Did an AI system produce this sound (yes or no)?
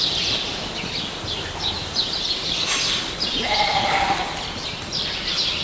yes